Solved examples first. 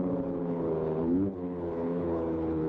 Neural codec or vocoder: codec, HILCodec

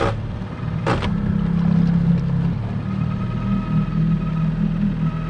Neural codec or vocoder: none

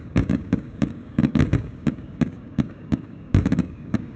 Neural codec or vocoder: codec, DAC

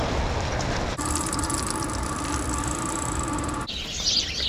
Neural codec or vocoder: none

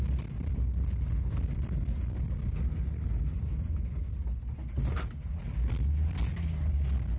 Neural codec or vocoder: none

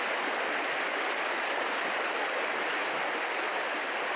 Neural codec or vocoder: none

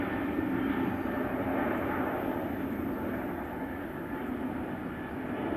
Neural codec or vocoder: none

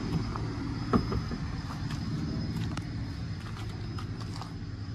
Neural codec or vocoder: none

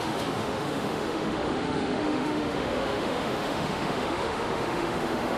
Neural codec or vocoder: autoencoder, DAC-VAE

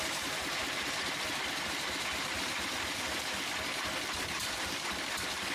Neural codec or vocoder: vocoder, BigVGAN v2